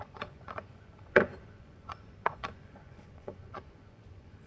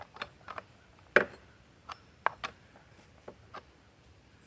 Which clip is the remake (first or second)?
first